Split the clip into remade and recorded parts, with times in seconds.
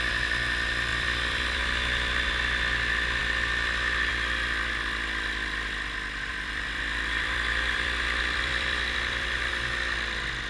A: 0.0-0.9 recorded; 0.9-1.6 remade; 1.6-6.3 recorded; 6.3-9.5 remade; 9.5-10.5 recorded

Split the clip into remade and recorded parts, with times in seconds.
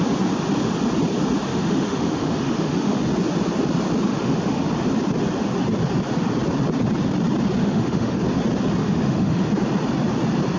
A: 0.0-1.5 recorded; 1.5-3.0 remade; 3.0-4.1 recorded; 4.1-4.7 remade; 4.7-7.6 recorded; 7.6-8.2 remade; 8.2-8.8 recorded; 8.8-9.5 remade; 9.5-10.6 recorded